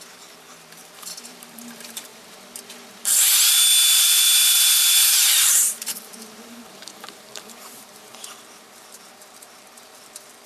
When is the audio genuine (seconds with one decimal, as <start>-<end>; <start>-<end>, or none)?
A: 2.1-5.0